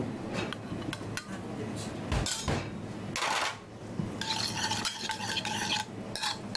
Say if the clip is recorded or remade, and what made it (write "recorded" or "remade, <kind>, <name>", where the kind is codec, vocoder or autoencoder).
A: recorded